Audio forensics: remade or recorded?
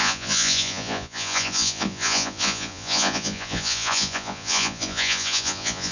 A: remade